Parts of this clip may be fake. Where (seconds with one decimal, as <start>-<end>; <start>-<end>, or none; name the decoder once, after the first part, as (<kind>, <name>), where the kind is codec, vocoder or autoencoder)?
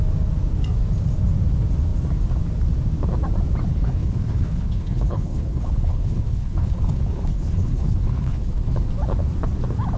3.7-8.7 (codec, HILCodec)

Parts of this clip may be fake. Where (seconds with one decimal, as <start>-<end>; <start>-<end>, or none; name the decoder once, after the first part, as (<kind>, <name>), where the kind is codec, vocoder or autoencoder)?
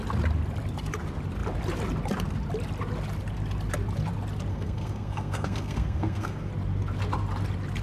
4.5-6.5 (codec, SNAC)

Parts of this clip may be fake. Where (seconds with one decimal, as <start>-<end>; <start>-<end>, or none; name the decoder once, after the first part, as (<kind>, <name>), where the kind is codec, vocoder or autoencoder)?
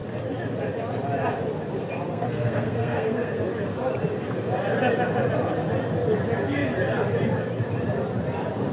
2.1-3.4 (codec, SNAC)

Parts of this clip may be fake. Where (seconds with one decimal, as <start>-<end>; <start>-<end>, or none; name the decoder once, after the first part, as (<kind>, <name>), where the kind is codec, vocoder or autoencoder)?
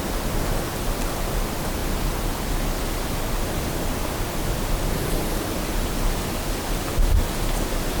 none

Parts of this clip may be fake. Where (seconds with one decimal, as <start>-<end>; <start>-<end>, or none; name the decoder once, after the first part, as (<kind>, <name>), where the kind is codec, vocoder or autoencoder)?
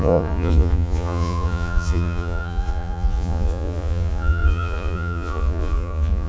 0.0-6.3 (vocoder, Vocos)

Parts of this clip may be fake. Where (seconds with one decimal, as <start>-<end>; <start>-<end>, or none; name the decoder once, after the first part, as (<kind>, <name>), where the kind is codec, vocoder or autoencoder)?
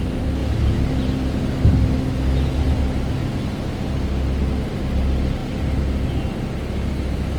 none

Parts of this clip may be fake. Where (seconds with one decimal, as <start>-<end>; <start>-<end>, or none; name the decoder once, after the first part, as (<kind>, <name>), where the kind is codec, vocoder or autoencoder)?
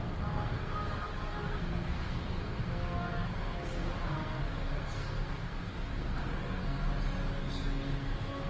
0.0-6.8 (codec, SNAC); 7.4-8.5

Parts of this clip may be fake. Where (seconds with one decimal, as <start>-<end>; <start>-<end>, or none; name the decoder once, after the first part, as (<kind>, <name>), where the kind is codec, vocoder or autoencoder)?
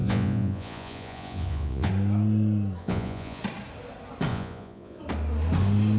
0.0-1.9 (vocoder, Vocos); 2.8-3.4; 4.3-5.0